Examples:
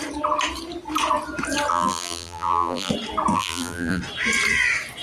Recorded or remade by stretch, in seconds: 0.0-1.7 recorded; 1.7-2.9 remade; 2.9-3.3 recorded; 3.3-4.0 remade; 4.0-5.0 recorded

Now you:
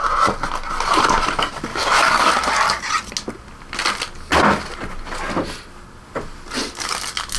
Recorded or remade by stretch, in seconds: 0.0-1.7 recorded; 1.7-2.3 remade; 2.3-7.4 recorded

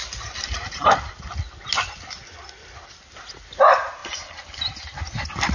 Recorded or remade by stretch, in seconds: 0.0-5.5 recorded

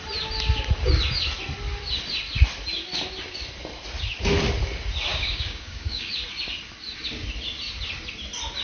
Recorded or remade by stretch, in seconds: 0.0-5.1 recorded; 5.1-6.1 remade; 6.1-8.6 recorded

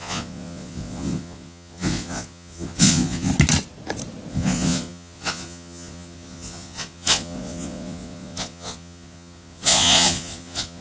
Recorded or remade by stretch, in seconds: 0.0-3.3 remade; 3.3-4.3 recorded; 4.3-10.8 remade

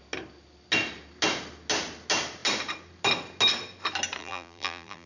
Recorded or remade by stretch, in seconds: 0.0-4.2 recorded; 4.2-5.1 remade